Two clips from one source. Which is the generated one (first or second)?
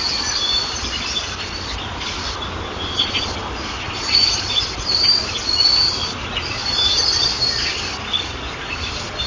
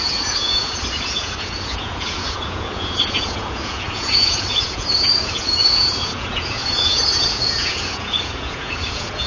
second